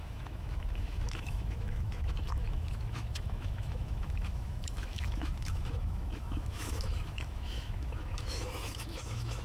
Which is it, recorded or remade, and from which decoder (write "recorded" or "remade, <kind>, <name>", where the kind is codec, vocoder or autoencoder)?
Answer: remade, autoencoder, DAC-VAE